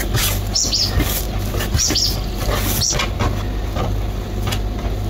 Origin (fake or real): real